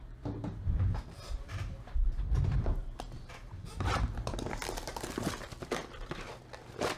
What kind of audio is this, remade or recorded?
remade